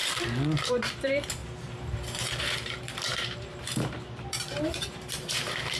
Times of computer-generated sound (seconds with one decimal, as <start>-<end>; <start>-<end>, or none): 0.7-1.4; 2.4-5.8